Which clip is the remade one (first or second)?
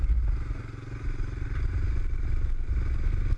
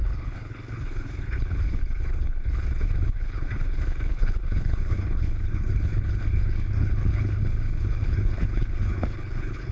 second